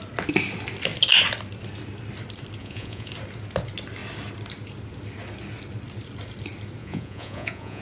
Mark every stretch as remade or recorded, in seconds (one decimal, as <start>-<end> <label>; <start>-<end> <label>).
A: 0.0-2.6 recorded; 2.6-3.1 remade; 3.1-6.8 recorded; 6.8-7.8 remade